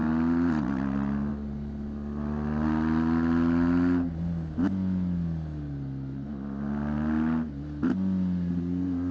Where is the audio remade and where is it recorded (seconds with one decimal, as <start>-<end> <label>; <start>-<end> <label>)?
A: 0.0-9.1 recorded